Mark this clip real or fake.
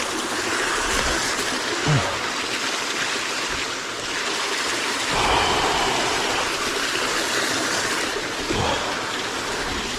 real